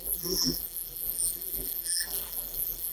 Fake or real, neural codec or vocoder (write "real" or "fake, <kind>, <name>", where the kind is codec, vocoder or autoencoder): fake, vocoder, BigVGAN v2